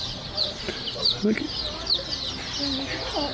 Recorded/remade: recorded